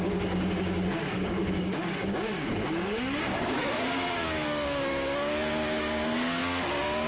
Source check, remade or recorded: remade